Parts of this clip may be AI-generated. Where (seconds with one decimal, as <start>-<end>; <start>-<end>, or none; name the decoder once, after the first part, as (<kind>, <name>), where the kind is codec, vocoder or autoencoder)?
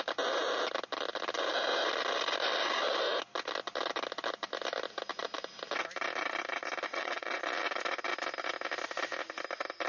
6.9-7.4 (vocoder, WaveNeXt)